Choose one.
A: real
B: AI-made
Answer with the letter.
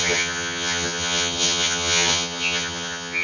B